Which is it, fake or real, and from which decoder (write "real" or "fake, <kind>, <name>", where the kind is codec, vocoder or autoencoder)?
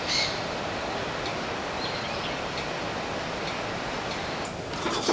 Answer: real